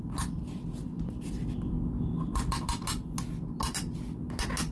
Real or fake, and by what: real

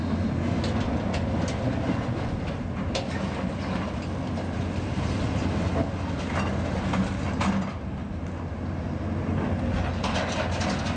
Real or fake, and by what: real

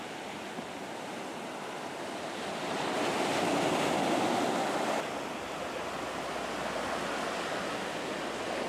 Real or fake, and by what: real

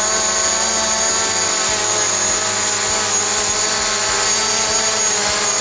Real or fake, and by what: real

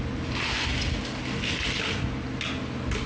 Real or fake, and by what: real